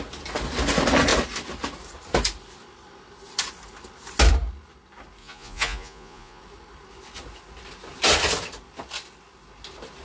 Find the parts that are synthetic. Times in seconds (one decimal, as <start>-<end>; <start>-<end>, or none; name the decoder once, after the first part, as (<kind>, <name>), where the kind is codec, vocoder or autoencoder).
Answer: 5.2-6.4 (vocoder, Vocos)